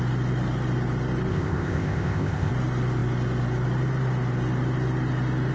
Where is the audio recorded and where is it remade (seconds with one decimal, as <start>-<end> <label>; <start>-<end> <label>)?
0.0-1.3 recorded; 1.3-2.5 remade; 2.5-5.5 recorded